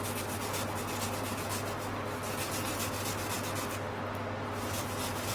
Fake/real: real